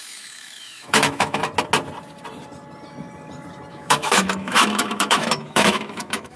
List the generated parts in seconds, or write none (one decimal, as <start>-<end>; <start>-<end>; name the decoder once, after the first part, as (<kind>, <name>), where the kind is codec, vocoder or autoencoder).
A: 0.0-1.4 (autoencoder, DAC-VAE); 3.7-6.4